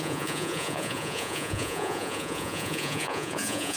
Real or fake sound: fake